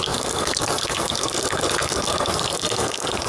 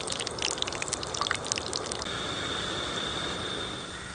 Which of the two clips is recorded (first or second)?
second